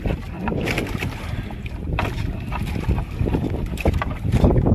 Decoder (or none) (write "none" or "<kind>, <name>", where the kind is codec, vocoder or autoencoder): none